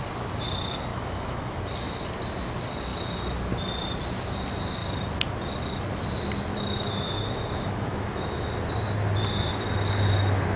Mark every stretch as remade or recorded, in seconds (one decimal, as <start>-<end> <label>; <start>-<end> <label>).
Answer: 0.0-0.9 recorded; 0.9-1.6 remade; 1.6-6.5 recorded; 6.5-8.5 remade; 8.5-10.6 recorded